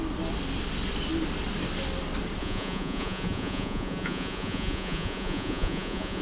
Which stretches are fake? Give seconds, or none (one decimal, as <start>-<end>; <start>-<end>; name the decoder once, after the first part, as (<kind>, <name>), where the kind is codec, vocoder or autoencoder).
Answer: 2.4-6.2 (vocoder, Vocos)